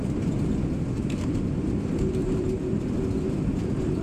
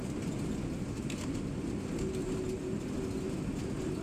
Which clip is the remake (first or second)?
first